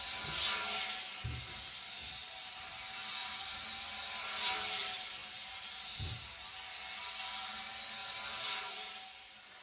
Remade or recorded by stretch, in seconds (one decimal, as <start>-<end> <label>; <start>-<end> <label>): 0.0-2.0 recorded; 2.0-2.6 remade; 2.6-3.2 recorded; 3.2-4.5 remade; 4.5-5.2 recorded; 5.2-6.6 remade; 6.6-9.6 recorded

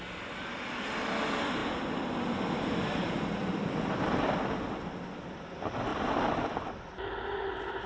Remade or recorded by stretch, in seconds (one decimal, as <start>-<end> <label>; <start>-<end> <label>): 0.0-5.9 recorded; 5.9-6.6 remade; 6.6-7.9 recorded

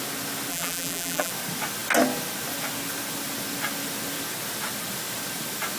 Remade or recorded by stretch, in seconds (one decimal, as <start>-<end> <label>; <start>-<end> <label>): 0.0-0.5 recorded; 0.5-1.3 remade; 1.3-5.8 recorded

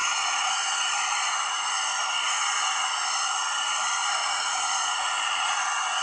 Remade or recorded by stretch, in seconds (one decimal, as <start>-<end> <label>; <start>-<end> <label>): 0.0-0.5 remade; 0.5-4.2 recorded; 4.2-5.5 remade; 5.5-6.0 recorded

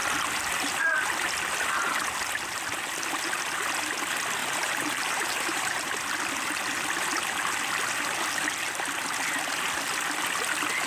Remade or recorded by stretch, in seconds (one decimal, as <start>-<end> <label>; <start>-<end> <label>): 0.0-4.4 recorded; 4.4-5.9 remade; 5.9-10.9 recorded

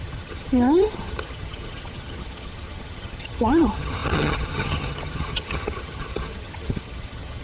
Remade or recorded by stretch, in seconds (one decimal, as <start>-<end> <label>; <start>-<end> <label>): 0.0-7.4 remade

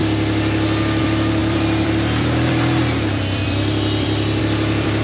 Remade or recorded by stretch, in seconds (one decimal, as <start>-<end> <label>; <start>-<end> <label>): 0.0-1.0 recorded; 1.0-5.0 remade

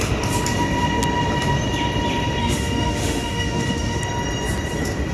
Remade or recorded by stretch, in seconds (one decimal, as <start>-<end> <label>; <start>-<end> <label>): 0.0-2.4 recorded; 2.4-4.0 remade; 4.0-5.1 recorded